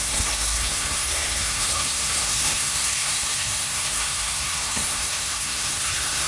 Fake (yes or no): yes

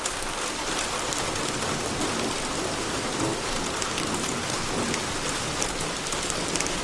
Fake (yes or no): no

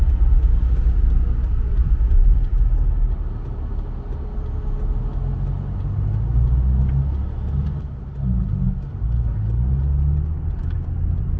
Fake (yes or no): no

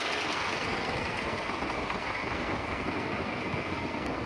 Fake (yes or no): yes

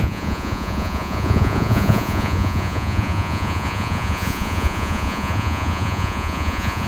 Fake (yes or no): yes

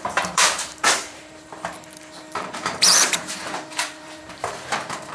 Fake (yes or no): yes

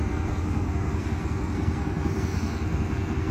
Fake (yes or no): yes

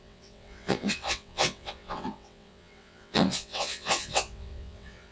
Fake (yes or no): yes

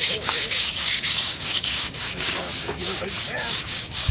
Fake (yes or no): yes